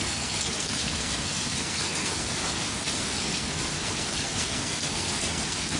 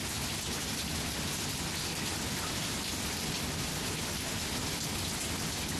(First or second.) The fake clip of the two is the first